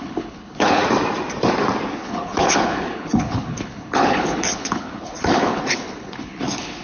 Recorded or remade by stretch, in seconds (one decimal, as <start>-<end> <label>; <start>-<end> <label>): 0.0-0.8 remade; 0.8-1.9 recorded; 1.9-6.8 remade